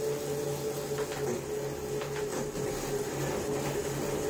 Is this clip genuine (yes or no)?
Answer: yes